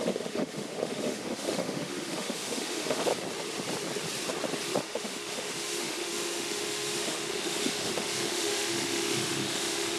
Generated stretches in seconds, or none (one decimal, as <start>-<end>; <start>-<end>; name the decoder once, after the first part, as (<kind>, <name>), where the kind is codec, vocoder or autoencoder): 0.0-3.1 (autoencoder, DAC-VAE); 4.8-10.0